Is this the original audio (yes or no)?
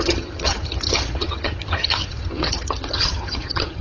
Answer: no